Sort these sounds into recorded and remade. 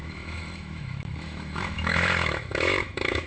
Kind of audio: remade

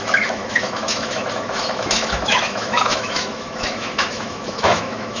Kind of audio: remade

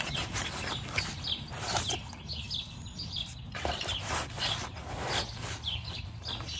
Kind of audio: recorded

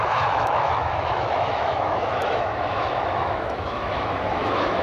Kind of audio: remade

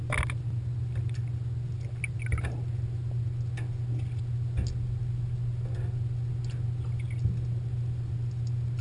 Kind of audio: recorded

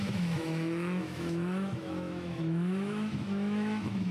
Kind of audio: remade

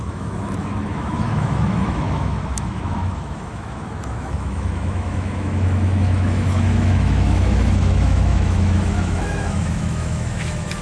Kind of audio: remade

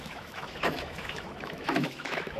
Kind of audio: remade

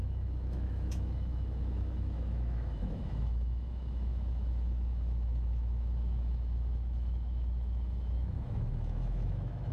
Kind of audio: remade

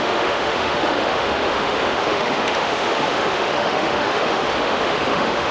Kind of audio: remade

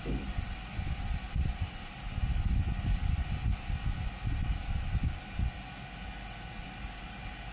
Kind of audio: recorded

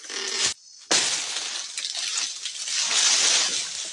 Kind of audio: recorded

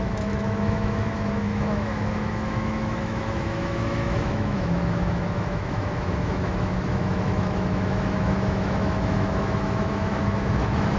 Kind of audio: remade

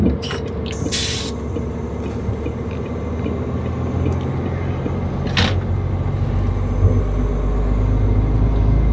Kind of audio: recorded